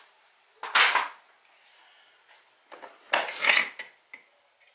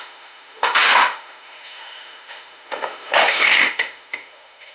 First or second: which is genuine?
first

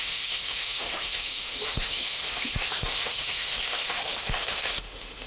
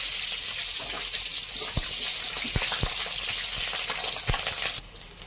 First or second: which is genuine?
second